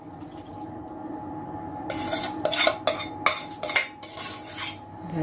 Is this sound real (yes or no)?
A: yes